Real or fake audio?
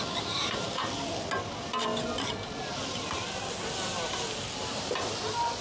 real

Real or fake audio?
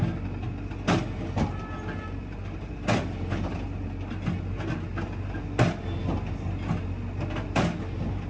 real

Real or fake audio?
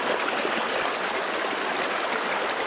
real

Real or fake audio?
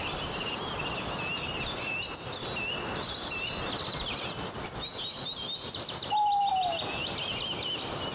real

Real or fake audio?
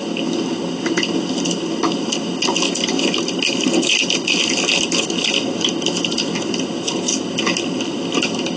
real